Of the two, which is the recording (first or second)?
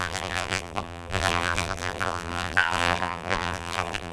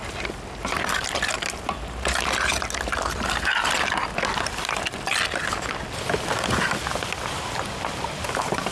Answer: second